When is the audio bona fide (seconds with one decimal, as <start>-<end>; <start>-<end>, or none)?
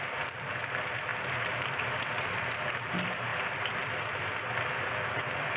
3.3-4.8